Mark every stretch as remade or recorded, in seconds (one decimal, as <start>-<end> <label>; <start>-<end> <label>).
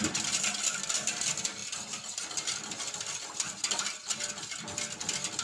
0.0-5.4 recorded